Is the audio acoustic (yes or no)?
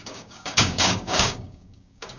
no